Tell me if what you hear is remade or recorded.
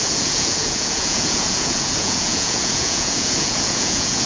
remade